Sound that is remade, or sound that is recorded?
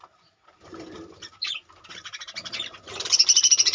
remade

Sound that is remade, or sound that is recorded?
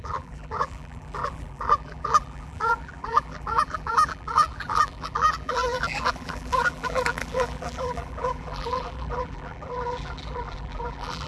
remade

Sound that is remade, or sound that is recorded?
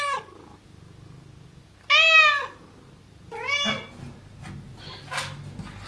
recorded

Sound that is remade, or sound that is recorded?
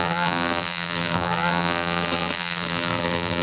remade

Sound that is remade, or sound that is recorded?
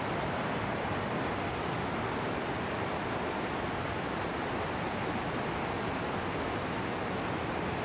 recorded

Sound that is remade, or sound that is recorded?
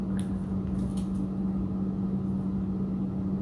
recorded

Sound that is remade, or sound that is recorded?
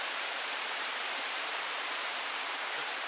remade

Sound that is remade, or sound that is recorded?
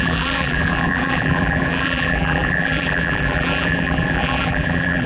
remade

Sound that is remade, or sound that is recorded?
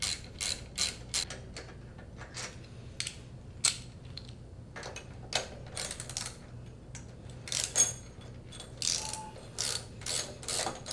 recorded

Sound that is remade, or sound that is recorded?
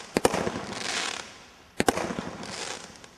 recorded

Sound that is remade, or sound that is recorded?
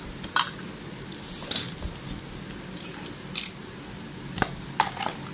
recorded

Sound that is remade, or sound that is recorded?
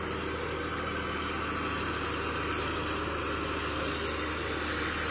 recorded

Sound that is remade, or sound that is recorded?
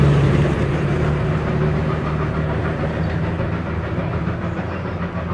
remade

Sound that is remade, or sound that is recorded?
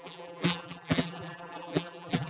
remade